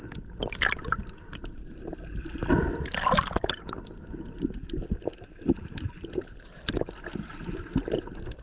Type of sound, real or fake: real